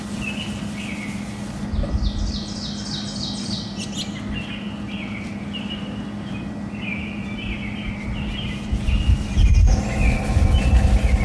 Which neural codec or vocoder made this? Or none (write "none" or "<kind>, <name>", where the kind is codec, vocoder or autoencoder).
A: none